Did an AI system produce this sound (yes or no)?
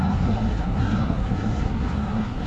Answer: yes